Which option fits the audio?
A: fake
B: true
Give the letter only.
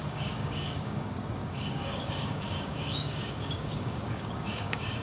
A